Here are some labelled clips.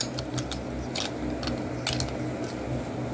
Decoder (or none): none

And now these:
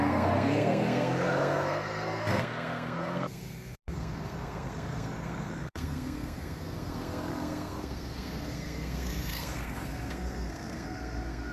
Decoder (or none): codec, SNAC